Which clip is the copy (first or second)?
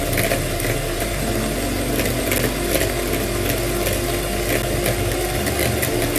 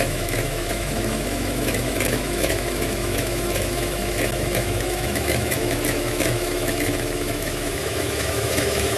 second